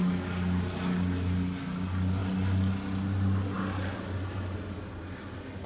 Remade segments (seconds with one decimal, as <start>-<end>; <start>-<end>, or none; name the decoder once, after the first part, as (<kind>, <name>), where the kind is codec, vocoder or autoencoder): none